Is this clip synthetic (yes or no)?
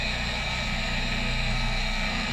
yes